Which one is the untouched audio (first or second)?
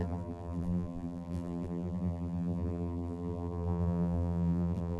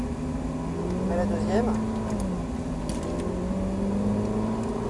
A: second